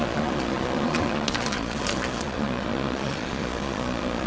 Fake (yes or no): yes